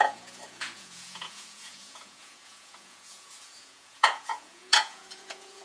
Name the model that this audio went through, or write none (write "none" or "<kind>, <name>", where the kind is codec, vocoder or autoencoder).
vocoder, Vocos